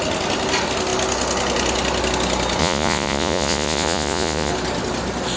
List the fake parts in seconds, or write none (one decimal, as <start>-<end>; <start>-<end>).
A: 2.6-4.5